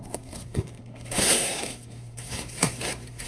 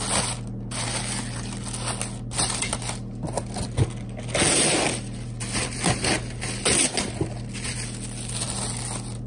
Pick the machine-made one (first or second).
first